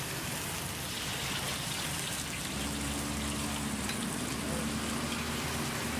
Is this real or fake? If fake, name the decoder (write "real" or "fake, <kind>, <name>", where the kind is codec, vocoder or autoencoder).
real